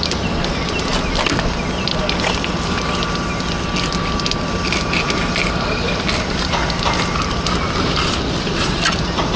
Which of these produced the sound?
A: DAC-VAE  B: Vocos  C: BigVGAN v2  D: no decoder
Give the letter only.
D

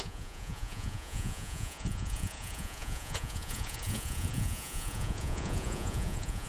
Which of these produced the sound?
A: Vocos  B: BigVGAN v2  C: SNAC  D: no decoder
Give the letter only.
A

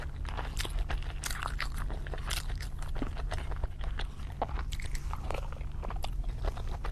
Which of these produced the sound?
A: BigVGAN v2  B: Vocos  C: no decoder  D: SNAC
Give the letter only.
C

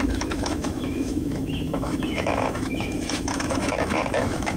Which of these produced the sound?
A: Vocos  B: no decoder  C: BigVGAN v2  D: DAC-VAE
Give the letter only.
D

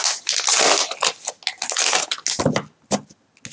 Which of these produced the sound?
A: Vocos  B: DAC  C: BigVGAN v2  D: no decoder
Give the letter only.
D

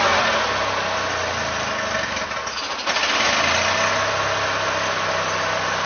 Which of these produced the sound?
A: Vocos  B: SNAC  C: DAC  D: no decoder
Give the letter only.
D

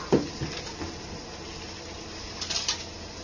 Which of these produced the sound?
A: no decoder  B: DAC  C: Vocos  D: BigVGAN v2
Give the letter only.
A